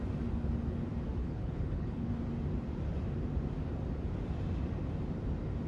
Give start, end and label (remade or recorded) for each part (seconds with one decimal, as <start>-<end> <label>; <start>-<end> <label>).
0.0-1.2 recorded; 1.2-2.1 remade; 2.1-5.7 recorded